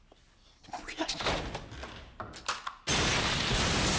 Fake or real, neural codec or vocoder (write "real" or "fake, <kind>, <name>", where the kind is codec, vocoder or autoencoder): real